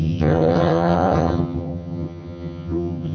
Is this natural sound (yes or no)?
no